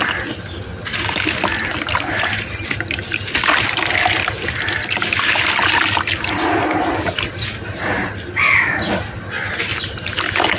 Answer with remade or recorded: recorded